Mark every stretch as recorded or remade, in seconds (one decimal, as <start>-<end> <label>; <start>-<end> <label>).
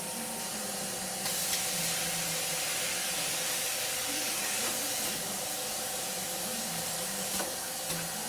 0.0-2.9 recorded; 2.9-7.9 remade; 7.9-8.3 recorded